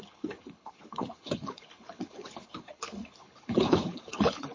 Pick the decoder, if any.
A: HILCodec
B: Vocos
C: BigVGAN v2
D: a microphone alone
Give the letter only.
A